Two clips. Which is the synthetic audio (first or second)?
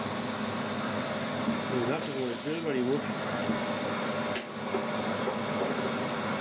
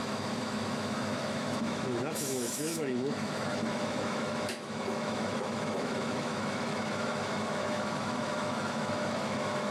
second